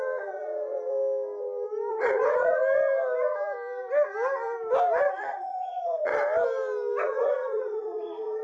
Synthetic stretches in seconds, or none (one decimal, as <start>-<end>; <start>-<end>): 0.0-0.9; 1.9-2.6; 5.1-6.1; 7.0-8.4